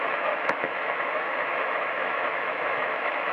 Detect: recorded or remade remade